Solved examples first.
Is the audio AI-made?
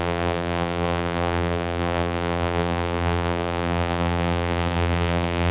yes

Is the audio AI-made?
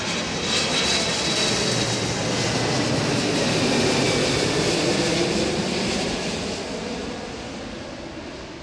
no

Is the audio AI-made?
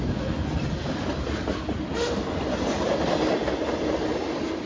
no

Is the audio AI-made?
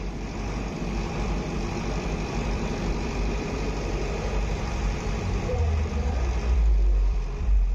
yes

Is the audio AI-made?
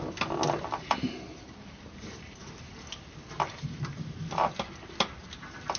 no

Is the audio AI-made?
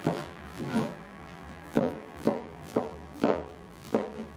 yes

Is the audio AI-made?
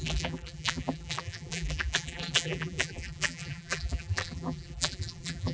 yes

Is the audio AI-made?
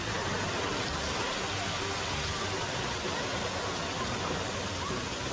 no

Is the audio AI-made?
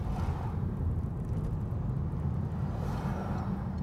no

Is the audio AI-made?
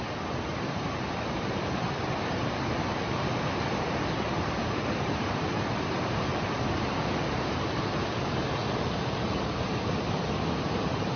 yes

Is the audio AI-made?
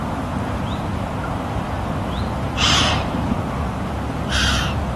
yes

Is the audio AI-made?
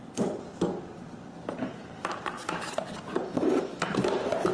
yes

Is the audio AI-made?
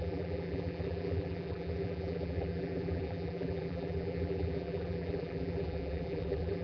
yes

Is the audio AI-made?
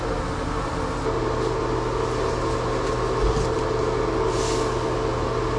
no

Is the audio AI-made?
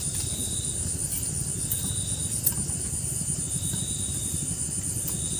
yes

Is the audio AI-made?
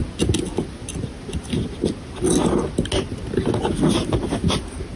no